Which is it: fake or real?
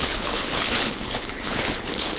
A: fake